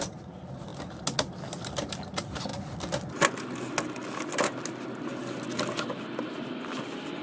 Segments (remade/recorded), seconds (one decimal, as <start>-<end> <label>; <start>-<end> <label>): 0.0-7.2 recorded